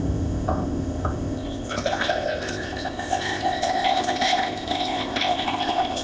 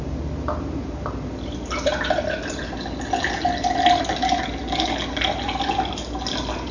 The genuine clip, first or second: second